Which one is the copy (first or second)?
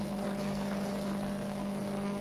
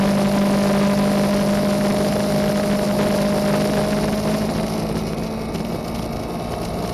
first